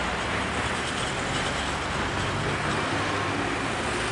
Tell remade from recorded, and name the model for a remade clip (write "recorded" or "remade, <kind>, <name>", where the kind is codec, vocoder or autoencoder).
recorded